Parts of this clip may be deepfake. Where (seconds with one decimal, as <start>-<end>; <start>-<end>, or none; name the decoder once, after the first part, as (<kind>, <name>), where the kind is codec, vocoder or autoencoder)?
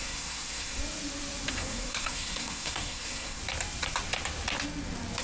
0.0-0.8 (codec, SNAC); 1.5-3.4